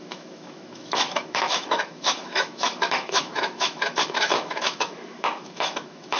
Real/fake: fake